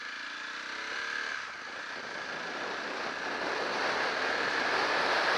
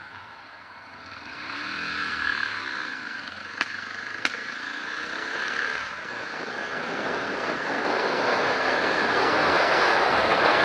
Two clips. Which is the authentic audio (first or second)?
first